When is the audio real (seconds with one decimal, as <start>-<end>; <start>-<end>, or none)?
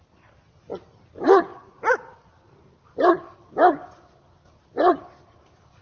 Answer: 0.0-5.8